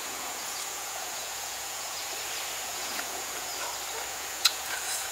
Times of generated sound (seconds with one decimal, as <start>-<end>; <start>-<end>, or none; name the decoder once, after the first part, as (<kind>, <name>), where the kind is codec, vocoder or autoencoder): 0.0-2.0 (vocoder, Vocos); 2.6-3.5; 4.1-5.1

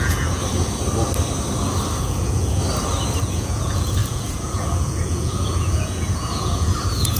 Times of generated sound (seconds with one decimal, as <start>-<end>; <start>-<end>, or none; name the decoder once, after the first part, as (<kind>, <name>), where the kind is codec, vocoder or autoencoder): 0.0-0.4 (vocoder, Vocos); 2.0-2.6; 3.2-7.2

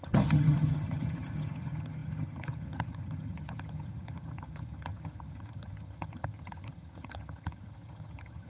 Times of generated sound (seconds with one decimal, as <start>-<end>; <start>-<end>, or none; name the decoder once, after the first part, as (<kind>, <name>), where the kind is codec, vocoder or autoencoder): 0.0-8.5 (vocoder, HiFi-GAN)

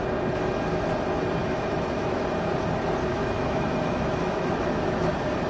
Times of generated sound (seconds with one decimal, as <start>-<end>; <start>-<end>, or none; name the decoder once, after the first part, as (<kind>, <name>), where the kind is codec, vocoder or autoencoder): 1.4-2.2 (autoencoder, DAC-VAE); 3.1-5.1

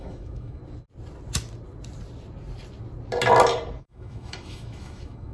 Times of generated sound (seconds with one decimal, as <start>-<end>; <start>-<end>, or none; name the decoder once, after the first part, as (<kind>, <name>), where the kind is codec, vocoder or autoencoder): 0.0-0.6 (autoencoder, DAC-VAE); 3.8-5.3

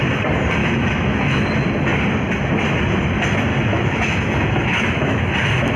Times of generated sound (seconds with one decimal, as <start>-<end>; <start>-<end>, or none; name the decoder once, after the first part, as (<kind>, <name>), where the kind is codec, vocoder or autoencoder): 0.6-1.4 (autoencoder, DAC-VAE); 3.5-5.3

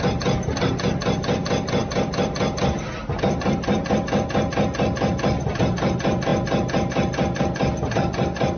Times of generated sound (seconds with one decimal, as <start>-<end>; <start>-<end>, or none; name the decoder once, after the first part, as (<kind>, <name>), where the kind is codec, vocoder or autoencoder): none

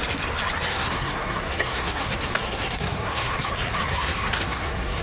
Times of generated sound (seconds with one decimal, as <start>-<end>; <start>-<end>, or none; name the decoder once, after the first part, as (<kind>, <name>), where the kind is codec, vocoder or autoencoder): 0.7-3.5 (codec, SNAC); 3.9-5.0